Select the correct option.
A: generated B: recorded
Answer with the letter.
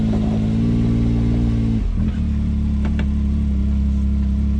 B